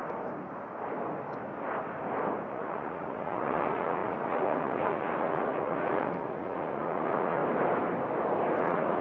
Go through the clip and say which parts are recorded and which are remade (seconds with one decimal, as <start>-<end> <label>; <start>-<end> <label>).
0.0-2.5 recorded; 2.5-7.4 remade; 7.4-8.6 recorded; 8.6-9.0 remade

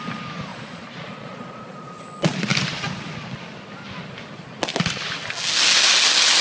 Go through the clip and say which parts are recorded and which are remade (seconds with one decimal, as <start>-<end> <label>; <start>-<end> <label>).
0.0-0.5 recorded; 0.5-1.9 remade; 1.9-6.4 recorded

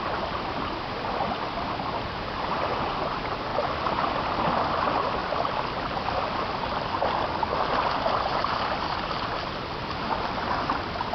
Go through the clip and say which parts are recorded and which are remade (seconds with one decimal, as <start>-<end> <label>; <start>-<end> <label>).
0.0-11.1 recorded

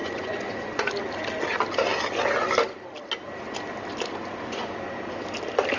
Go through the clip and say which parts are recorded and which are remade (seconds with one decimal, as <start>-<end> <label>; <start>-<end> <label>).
0.0-0.9 remade; 0.9-5.8 recorded

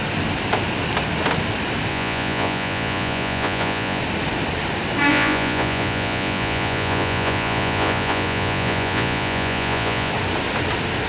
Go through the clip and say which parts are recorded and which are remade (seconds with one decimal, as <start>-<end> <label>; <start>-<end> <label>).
0.0-1.9 recorded; 1.9-4.0 remade; 4.0-5.1 recorded; 5.1-10.1 remade; 10.1-11.1 recorded

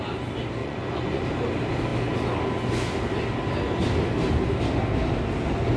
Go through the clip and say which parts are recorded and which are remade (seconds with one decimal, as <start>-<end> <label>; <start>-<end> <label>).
0.0-0.6 recorded; 0.6-1.2 remade; 1.2-5.8 recorded